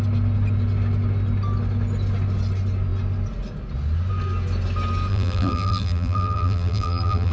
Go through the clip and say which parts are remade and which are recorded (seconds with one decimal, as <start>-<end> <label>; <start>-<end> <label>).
0.0-5.1 recorded; 5.1-7.3 remade